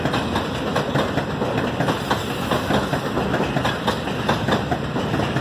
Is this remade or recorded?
recorded